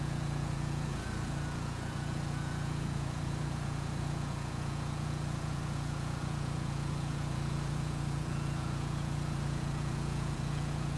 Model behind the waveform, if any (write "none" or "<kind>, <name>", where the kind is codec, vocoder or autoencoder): vocoder, Vocos